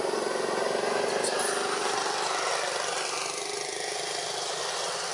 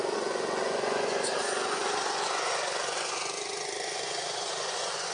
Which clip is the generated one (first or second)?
second